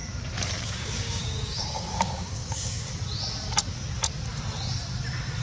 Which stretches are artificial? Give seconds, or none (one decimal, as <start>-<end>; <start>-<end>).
0.6-2.9